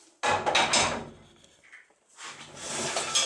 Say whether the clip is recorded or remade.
recorded